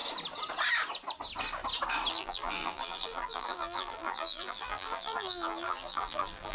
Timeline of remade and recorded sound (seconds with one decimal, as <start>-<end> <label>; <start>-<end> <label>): 0.0-2.1 recorded; 2.1-6.5 remade